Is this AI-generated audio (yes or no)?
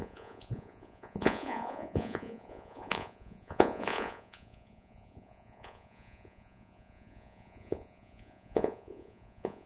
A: yes